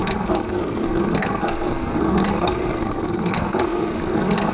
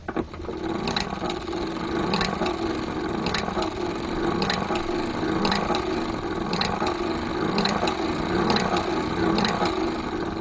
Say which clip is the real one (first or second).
second